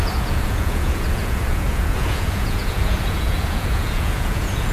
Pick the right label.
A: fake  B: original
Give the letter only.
A